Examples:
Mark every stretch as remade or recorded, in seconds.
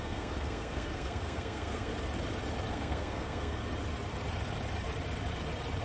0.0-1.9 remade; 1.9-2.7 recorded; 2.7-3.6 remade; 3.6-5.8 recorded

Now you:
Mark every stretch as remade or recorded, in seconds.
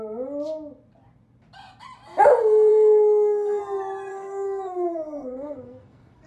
0.0-2.7 recorded; 2.7-3.6 remade; 3.6-4.1 recorded; 4.1-6.3 remade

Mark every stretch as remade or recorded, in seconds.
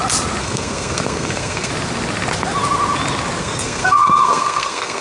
0.0-0.4 recorded; 0.4-1.7 remade; 1.7-3.4 recorded; 3.4-5.0 remade